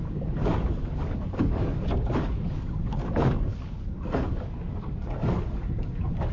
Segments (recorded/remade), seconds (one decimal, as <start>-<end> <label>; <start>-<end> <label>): 0.0-6.3 remade